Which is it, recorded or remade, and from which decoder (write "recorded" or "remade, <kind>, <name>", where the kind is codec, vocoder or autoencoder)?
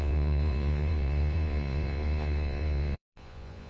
remade, vocoder, Vocos